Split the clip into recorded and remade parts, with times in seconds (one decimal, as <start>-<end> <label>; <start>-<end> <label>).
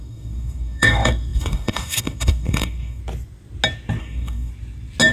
0.0-3.0 remade; 3.0-4.0 recorded; 4.0-4.5 remade; 4.5-5.1 recorded